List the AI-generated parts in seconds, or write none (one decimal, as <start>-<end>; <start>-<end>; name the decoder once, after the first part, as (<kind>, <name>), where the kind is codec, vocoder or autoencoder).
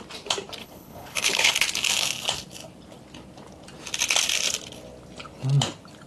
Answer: 0.6-1.5 (codec, HILCodec)